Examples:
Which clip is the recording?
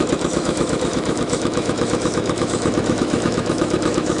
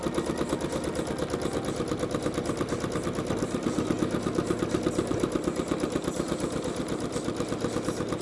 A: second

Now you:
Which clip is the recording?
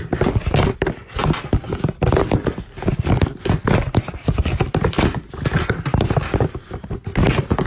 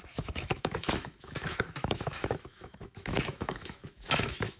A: first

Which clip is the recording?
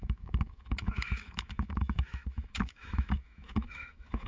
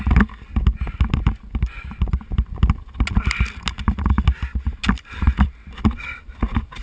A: second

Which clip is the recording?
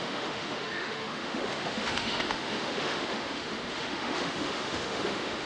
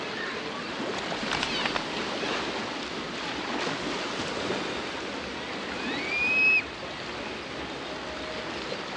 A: second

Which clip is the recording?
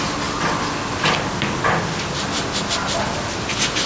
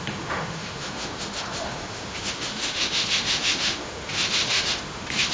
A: first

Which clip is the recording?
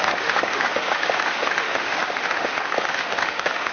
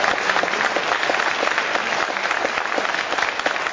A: second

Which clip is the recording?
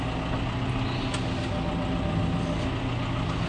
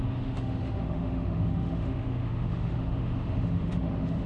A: first